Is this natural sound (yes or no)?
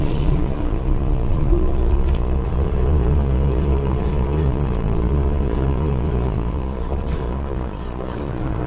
no